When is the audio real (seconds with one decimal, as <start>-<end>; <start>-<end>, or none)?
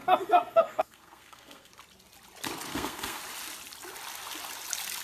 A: 1.7-2.7; 3.2-5.0